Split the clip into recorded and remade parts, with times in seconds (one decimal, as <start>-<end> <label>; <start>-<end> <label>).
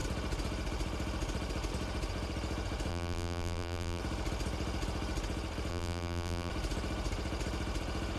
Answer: 0.0-2.9 recorded; 2.9-4.0 remade; 4.0-5.7 recorded; 5.7-6.5 remade; 6.5-8.2 recorded